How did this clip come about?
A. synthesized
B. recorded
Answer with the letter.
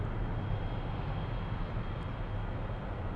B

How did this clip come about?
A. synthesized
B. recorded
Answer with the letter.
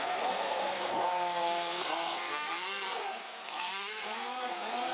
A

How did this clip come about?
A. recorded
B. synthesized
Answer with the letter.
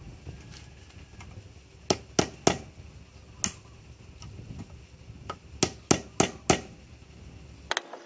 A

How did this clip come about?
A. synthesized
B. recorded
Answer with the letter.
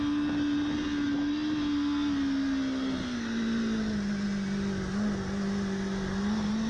B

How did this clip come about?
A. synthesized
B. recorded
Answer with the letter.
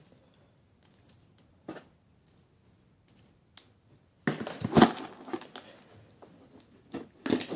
B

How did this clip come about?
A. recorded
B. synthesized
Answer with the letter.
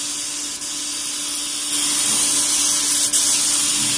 A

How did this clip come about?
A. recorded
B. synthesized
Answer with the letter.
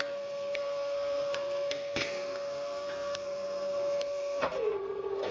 B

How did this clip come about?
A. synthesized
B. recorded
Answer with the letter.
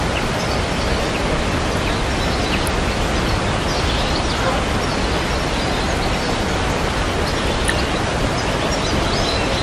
B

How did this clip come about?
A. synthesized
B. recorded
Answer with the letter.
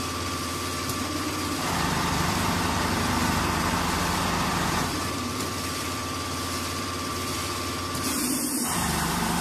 A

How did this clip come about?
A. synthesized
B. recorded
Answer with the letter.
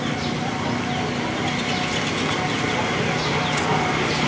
B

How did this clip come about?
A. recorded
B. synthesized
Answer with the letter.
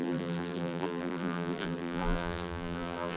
B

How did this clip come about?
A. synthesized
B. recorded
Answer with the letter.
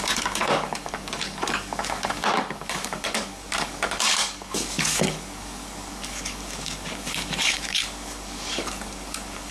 A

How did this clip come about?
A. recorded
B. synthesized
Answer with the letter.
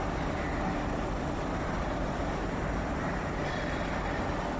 A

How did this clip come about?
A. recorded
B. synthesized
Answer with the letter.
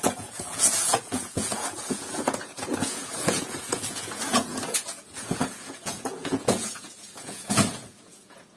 B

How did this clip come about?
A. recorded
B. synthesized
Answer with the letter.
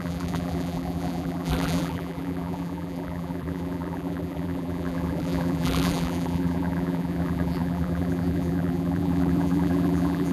B